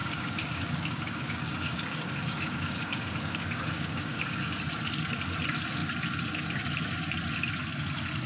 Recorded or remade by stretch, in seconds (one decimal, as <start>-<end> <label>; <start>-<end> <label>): 0.0-4.6 remade; 4.6-8.3 recorded